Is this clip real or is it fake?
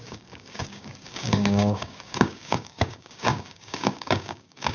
fake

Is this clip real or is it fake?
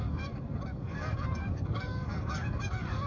fake